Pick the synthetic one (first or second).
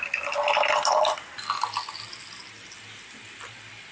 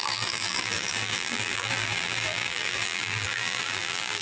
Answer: second